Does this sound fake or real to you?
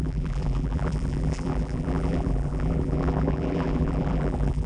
fake